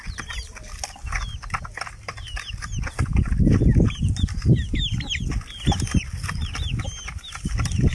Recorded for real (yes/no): yes